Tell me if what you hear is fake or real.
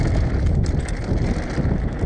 real